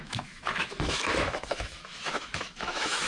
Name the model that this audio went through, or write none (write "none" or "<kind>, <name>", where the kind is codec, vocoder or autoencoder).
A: autoencoder, DAC-VAE